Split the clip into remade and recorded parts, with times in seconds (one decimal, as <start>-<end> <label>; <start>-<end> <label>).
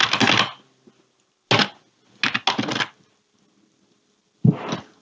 0.0-5.0 recorded